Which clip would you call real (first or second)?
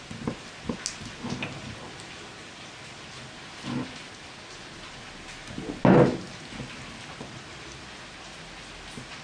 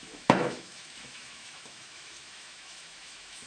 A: first